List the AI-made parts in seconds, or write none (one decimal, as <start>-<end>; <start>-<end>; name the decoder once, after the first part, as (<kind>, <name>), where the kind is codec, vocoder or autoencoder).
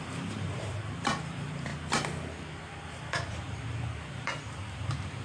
0.0-1.7 (vocoder, BigVGAN v2); 3.3-5.2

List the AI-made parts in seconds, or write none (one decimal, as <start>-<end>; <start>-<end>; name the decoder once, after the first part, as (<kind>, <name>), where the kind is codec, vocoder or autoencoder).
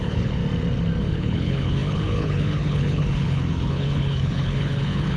0.0-0.4 (codec, HILCodec); 1.0-5.2